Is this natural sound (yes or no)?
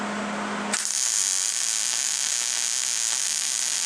yes